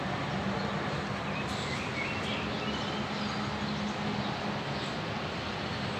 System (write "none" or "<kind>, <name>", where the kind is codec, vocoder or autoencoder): none